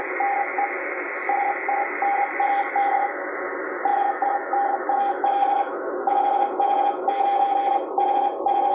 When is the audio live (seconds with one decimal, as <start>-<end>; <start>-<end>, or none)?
0.0-3.9; 5.9-8.7